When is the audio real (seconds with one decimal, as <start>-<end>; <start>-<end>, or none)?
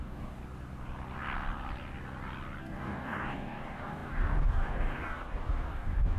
0.4-2.6